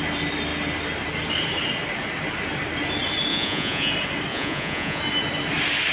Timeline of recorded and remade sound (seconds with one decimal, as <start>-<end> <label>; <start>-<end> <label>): 0.0-3.3 recorded; 3.3-3.9 remade; 3.9-4.3 recorded; 4.3-5.0 remade; 5.0-5.9 recorded